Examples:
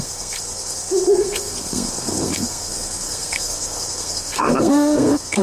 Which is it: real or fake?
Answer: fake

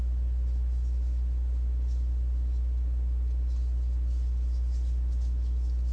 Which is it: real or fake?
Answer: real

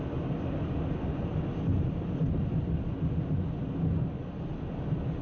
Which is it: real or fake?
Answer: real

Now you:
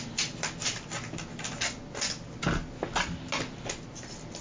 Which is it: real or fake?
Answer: real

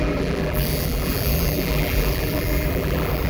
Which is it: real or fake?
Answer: fake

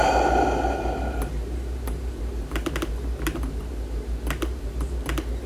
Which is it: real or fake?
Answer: fake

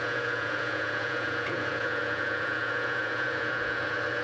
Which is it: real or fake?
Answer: fake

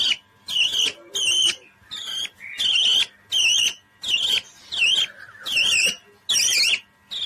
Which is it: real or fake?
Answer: real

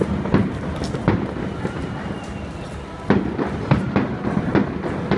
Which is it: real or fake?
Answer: real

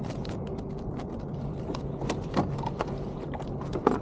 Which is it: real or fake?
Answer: real